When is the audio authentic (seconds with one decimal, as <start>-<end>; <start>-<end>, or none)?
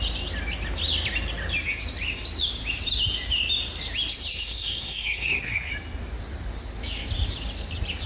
0.0-4.3; 5.7-8.1